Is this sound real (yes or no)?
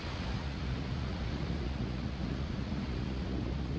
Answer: no